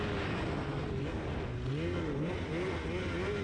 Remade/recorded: recorded